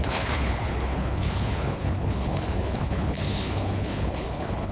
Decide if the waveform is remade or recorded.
remade